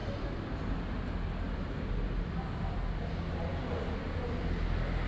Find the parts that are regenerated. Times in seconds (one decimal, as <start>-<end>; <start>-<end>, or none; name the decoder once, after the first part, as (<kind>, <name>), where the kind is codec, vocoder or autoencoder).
none